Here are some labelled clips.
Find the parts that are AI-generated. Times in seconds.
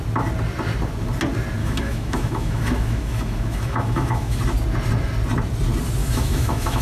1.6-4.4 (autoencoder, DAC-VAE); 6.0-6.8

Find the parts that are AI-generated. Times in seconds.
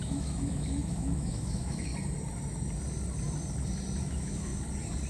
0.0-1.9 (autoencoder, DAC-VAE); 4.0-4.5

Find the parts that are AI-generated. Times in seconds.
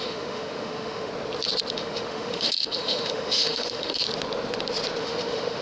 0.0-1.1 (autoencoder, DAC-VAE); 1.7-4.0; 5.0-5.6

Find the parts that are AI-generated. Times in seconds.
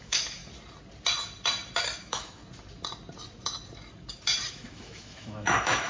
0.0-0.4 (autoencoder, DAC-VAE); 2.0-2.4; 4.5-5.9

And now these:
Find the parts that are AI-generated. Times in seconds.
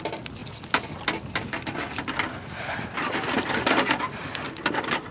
none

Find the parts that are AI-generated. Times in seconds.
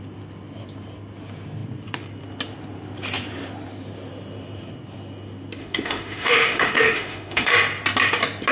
5.6-7.5 (autoencoder, DAC-VAE)